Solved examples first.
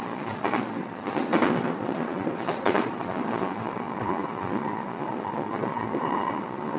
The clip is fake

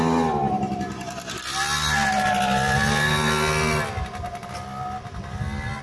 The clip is real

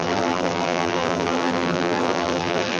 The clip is fake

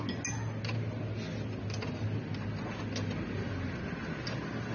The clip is real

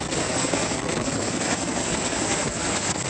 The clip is fake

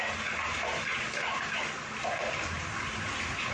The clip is real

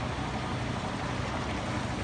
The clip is real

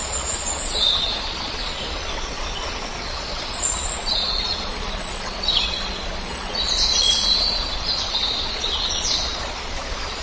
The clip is fake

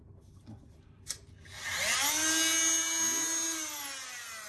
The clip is real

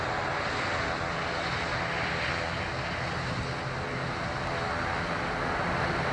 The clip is real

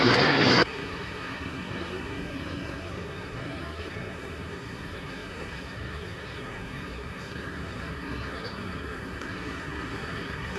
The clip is fake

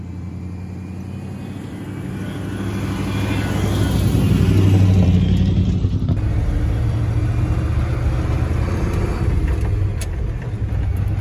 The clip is real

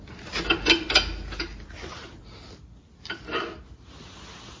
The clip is real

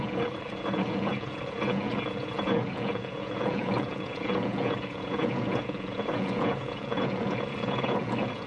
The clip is fake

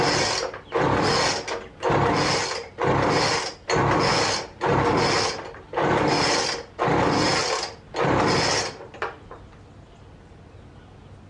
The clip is real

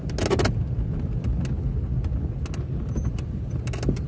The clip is real